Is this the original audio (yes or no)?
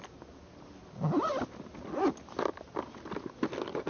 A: yes